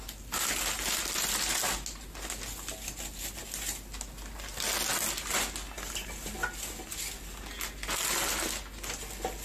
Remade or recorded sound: recorded